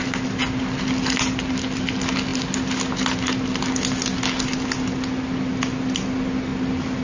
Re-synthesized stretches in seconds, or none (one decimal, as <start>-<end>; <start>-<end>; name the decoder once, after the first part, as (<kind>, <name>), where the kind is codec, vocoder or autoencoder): 6.5-7.0 (vocoder, BigVGAN v2)